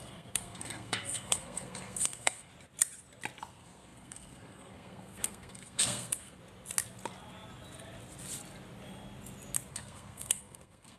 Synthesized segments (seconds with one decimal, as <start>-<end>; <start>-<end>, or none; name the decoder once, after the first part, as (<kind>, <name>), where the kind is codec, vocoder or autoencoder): 0.0-2.5 (codec, SNAC); 3.5-6.4; 9.7-11.0